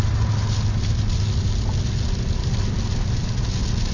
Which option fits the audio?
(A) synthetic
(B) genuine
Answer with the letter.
B